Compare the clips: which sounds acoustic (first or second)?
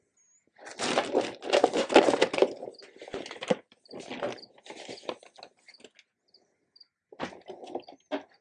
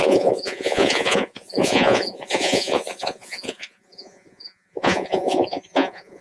first